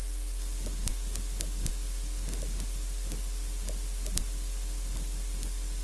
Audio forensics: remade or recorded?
recorded